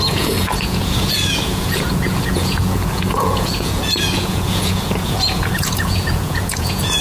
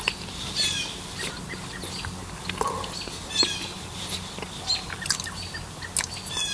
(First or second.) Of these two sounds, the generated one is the first